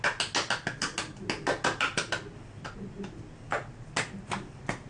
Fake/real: real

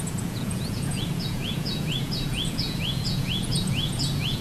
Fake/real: fake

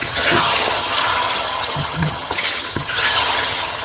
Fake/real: fake